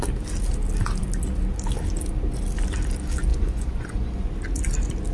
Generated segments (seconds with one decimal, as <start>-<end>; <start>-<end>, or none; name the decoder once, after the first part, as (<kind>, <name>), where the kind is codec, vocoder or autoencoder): 3.3-4.3 (vocoder, Vocos)

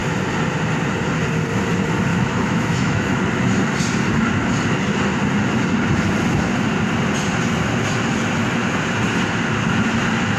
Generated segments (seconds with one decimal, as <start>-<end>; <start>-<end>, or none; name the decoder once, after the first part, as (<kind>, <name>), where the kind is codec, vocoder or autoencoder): 2.1-3.2 (autoencoder, DAC-VAE)

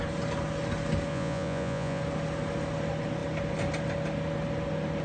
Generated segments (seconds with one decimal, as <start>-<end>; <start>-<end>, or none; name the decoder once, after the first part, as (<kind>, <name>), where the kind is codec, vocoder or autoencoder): 1.1-2.0 (vocoder, Vocos)

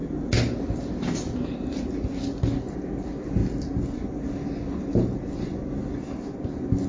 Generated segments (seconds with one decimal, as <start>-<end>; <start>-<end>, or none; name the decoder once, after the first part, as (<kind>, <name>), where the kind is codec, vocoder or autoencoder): none